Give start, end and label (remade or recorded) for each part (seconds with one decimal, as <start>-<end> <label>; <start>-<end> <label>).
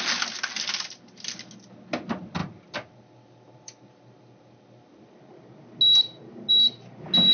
0.0-7.3 recorded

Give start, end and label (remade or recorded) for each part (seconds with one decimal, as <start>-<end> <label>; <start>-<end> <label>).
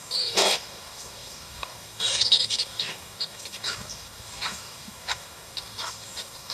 0.0-6.5 remade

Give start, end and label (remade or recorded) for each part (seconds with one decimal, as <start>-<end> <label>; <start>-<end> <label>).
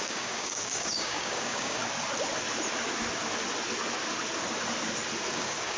0.0-1.8 remade; 1.8-5.3 recorded; 5.3-5.8 remade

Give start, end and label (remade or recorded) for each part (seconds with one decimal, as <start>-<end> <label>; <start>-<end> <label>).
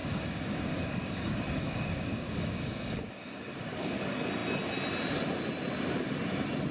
0.0-4.0 remade; 4.0-6.7 recorded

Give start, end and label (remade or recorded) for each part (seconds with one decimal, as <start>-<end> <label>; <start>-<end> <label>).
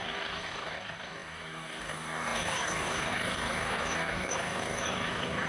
0.0-5.5 remade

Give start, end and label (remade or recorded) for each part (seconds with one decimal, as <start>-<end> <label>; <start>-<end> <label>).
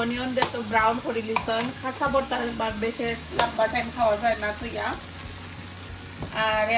0.0-0.6 recorded; 0.6-4.3 remade; 4.3-6.8 recorded